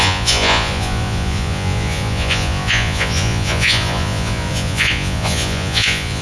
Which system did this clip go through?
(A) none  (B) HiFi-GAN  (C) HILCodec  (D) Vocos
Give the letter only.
D